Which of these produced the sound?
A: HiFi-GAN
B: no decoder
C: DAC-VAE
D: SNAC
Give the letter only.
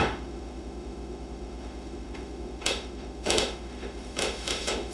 C